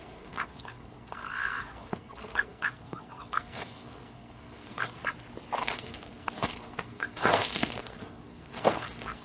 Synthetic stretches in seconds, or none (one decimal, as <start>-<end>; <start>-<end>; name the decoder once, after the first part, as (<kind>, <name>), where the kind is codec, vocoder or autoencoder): 0.0-5.0 (codec, SNAC); 5.6-9.2